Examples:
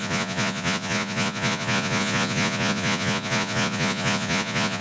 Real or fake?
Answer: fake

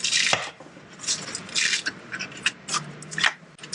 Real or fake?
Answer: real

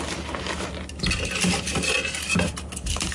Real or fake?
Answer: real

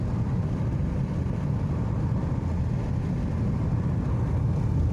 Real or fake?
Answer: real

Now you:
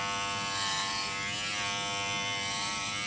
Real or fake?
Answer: real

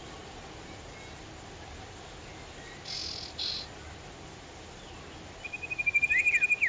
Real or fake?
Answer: real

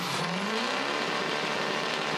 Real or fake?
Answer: real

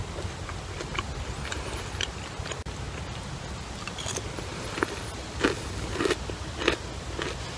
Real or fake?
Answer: real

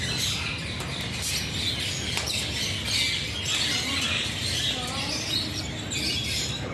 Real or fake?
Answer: real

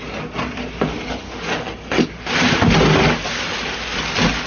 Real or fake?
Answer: real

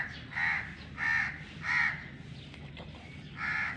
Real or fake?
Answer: real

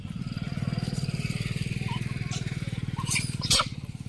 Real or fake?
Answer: real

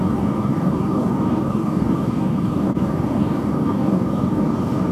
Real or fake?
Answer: fake